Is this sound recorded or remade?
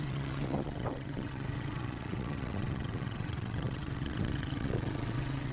remade